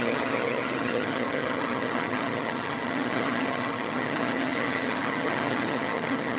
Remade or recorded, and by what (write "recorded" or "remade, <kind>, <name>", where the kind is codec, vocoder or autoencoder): remade, vocoder, HiFi-GAN